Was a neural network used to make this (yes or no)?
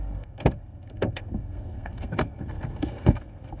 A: yes